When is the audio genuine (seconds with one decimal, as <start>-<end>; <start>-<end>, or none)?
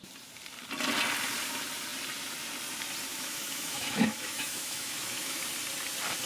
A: 0.0-3.1; 5.4-6.3